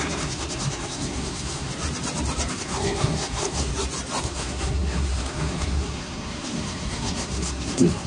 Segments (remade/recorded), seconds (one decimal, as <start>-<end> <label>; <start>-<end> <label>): 0.0-1.7 remade; 1.7-2.5 recorded; 2.5-3.7 remade; 3.7-4.2 recorded; 4.2-8.1 remade